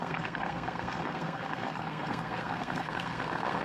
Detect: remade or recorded remade